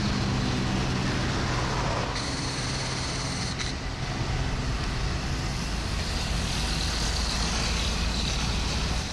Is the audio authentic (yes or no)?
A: yes